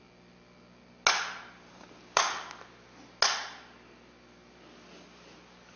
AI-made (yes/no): no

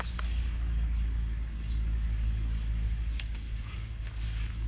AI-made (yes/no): yes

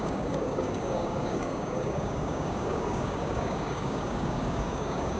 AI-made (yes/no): yes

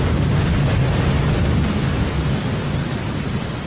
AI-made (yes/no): no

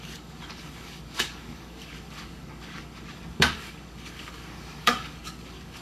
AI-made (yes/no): yes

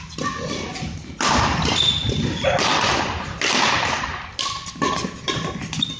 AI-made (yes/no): no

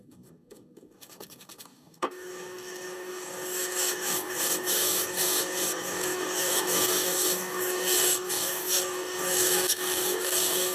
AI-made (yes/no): yes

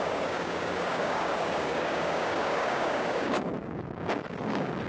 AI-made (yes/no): yes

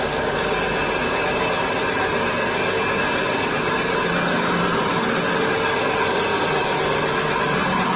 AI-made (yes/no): no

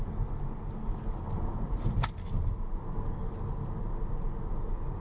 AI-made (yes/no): no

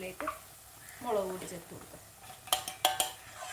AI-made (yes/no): no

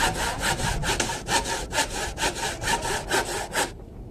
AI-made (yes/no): no